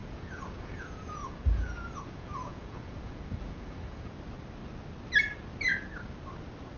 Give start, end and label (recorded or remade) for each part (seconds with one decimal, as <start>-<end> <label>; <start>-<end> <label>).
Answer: 0.0-4.1 remade; 4.1-6.8 recorded